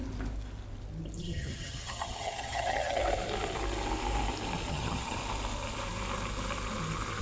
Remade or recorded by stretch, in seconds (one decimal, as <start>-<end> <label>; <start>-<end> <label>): 0.0-1.2 recorded; 1.2-3.0 remade; 3.0-4.7 recorded; 4.7-5.2 remade; 5.2-7.2 recorded